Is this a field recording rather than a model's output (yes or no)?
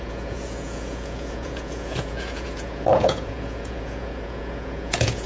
no